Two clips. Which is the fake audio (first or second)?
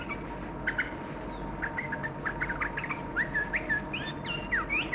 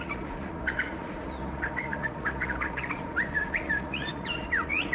second